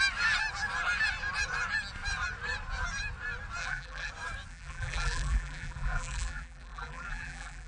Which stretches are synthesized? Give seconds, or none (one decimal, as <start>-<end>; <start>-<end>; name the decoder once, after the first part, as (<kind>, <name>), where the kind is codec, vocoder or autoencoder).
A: 3.6-4.1 (vocoder, BigVGAN v2); 4.5-7.7